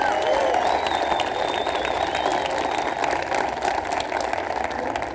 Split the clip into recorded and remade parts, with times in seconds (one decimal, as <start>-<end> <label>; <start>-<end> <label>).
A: 0.0-2.3 recorded; 2.3-3.0 remade; 3.0-5.1 recorded